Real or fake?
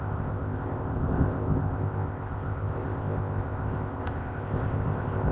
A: fake